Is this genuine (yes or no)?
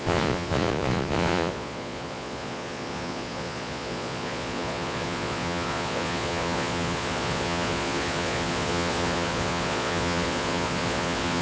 no